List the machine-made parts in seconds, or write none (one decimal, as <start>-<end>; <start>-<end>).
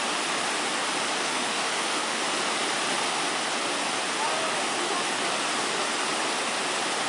1.2-2.2